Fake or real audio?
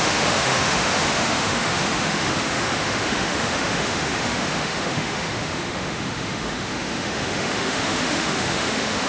fake